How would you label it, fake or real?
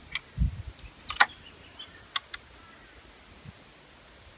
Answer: real